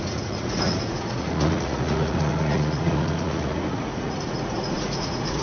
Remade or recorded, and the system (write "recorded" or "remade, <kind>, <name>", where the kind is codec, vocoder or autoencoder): remade, vocoder, Vocos